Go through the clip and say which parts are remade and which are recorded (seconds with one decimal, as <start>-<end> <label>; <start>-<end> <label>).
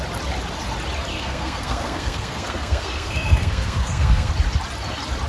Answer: 0.0-1.1 recorded; 1.1-4.3 remade; 4.3-5.3 recorded